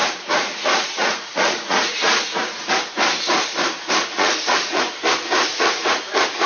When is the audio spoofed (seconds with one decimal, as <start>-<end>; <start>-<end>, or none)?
0.0-2.7; 4.0-4.8; 5.5-6.5